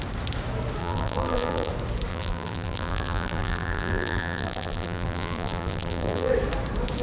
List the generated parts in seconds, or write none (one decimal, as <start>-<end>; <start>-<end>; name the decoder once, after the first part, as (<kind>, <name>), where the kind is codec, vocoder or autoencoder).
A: 0.8-1.7 (vocoder, BigVGAN v2); 2.1-6.3

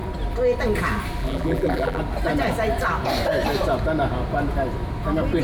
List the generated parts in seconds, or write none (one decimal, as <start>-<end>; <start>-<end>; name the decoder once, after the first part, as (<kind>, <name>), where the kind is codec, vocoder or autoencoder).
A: 1.2-2.0 (vocoder, BigVGAN v2)

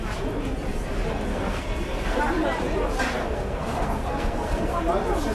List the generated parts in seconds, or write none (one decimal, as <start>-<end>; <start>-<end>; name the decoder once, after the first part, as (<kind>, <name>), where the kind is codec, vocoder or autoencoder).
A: 1.3-2.2 (codec, SNAC); 3.2-4.8

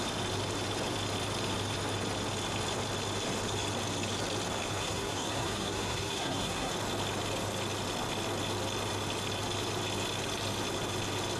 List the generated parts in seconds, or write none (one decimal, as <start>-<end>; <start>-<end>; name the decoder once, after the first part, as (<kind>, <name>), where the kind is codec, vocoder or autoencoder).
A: 4.7-6.7 (codec, SNAC)

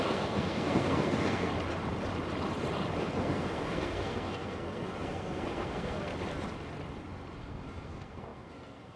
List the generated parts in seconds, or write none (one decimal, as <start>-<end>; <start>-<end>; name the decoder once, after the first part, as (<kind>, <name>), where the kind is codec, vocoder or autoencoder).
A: 0.0-1.5 (codec, SNAC); 3.0-6.1; 7.4-9.0

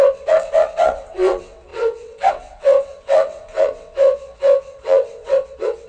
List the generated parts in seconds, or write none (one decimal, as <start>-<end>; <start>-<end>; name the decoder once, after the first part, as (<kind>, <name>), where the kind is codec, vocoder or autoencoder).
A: 0.0-5.9 (vocoder, WaveNeXt)